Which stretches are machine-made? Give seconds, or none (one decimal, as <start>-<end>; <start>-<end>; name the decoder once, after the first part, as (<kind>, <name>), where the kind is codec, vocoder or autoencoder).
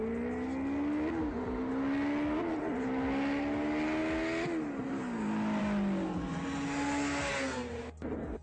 none